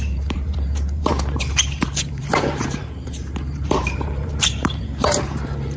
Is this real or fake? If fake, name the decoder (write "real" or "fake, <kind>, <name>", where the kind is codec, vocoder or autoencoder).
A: fake, vocoder, BigVGAN v2